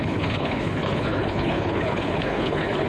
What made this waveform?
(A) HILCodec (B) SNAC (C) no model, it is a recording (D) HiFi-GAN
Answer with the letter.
A